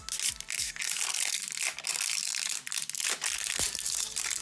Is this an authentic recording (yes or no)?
yes